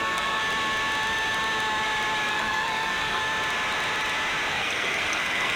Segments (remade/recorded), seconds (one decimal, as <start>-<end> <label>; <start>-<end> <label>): 0.0-0.4 remade; 0.4-2.3 recorded; 2.3-3.2 remade; 3.2-4.5 recorded; 4.5-5.6 remade